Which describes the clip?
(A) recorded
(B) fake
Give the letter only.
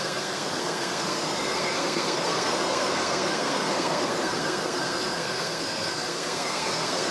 B